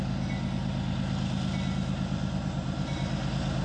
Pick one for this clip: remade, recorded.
recorded